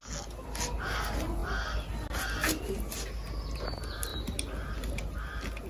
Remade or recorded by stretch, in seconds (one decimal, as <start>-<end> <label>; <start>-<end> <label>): 0.0-5.7 recorded